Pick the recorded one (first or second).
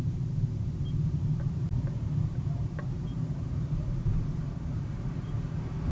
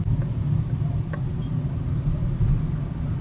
second